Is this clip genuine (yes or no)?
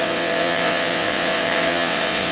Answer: no